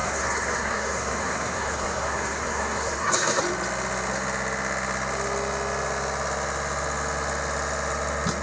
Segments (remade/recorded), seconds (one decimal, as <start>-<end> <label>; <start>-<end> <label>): 0.0-3.4 remade; 3.4-8.4 recorded